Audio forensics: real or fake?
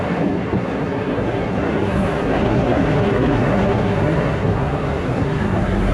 fake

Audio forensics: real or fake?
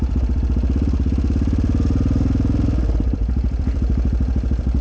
real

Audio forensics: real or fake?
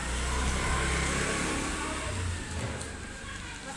real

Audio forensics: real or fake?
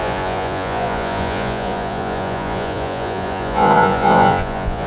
fake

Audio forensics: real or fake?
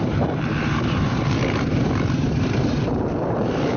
fake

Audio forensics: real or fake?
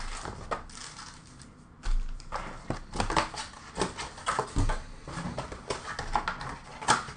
real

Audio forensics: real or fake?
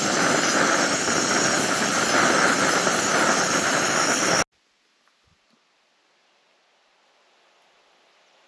real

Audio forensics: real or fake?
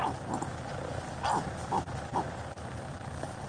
real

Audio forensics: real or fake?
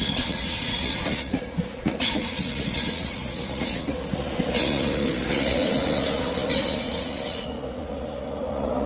fake